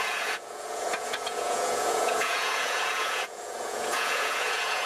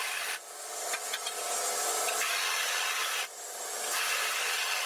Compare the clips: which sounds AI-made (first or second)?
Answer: first